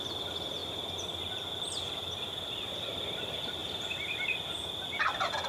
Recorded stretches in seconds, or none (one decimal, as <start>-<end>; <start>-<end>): 0.0-3.6; 4.6-5.5